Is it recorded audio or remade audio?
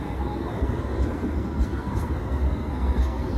remade